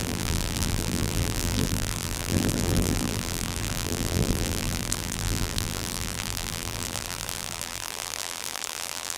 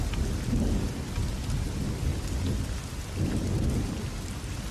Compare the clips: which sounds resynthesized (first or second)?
first